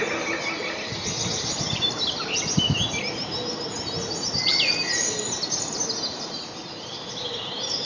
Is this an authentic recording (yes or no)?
yes